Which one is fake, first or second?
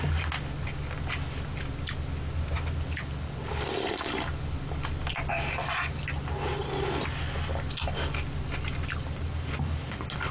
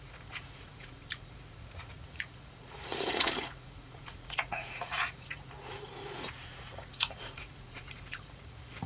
second